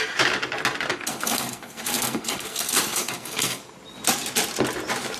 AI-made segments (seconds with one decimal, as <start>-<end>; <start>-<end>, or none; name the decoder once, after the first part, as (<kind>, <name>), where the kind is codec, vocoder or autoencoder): 0.9-3.6 (codec, SNAC)